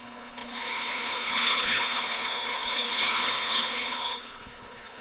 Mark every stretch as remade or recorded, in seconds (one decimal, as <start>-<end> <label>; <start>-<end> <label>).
0.0-5.0 remade

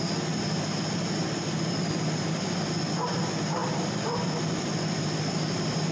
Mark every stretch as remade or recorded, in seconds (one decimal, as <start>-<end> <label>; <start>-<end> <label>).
0.0-5.9 recorded